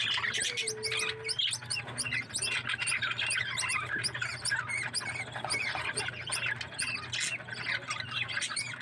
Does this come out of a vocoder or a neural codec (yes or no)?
no